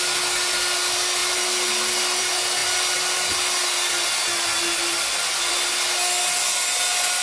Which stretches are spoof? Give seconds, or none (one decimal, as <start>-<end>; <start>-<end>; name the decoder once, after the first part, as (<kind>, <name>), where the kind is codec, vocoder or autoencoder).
none